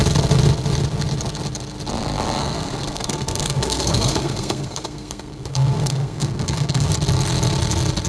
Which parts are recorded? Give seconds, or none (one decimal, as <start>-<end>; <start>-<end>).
0.0-2.4; 6.9-8.1